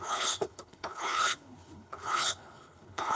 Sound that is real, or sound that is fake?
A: fake